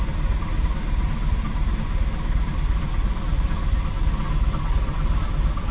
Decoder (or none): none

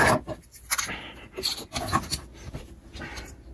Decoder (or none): none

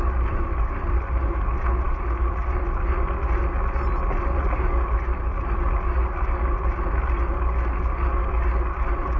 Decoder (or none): none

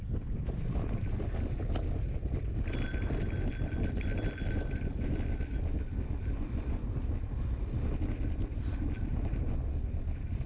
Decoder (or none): none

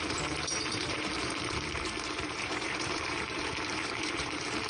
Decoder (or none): vocoder, BigVGAN v2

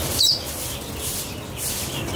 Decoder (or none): none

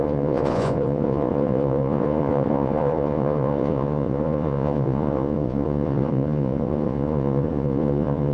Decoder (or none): vocoder, Vocos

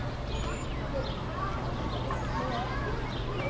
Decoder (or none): none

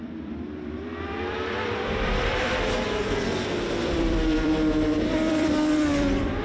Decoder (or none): vocoder, BigVGAN v2